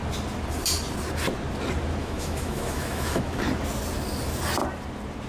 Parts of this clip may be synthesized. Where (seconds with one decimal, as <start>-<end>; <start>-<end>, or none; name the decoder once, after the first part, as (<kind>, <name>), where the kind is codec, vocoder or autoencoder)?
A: 2.0-3.4 (autoencoder, DAC-VAE)